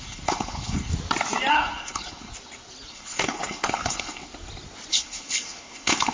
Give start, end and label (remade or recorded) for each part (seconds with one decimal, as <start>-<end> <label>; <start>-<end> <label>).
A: 0.0-0.9 remade; 0.9-1.5 recorded; 1.5-2.3 remade; 2.3-2.9 recorded; 2.9-4.3 remade; 4.3-4.9 recorded; 4.9-6.1 remade